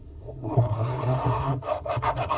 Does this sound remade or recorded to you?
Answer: remade